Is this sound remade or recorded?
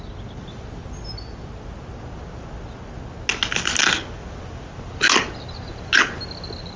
recorded